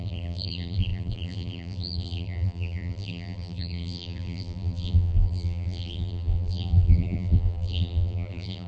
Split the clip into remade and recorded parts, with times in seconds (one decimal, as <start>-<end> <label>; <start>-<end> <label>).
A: 0.0-8.7 remade